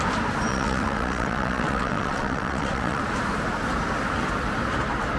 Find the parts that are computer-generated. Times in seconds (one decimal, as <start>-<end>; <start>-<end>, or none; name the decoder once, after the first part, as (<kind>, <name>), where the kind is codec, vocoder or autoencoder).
0.5-3.0 (vocoder, WaveNeXt)